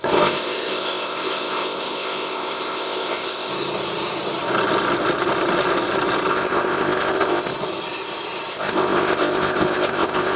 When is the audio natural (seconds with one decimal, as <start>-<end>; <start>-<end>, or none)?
3.5-6.3; 7.5-8.5